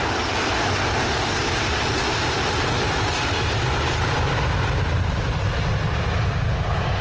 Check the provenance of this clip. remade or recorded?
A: recorded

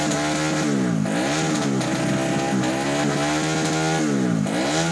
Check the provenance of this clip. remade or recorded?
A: recorded